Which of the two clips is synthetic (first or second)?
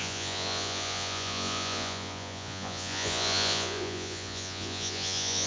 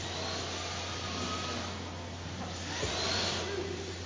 first